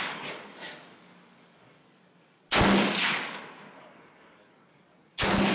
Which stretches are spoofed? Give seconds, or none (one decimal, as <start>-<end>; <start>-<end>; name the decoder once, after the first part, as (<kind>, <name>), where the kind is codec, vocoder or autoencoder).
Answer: 0.0-1.8 (codec, DAC); 3.8-5.5